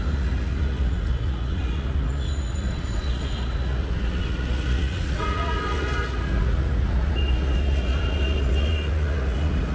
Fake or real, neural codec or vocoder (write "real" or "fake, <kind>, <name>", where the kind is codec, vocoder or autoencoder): fake, vocoder, Vocos